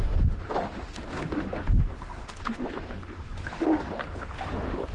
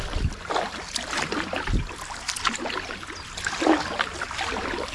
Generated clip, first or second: first